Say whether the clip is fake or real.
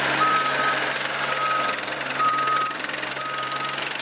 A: fake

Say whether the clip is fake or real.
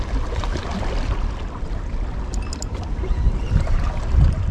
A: real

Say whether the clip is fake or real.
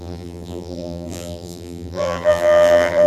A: fake